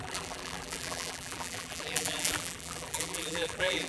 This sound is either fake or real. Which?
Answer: fake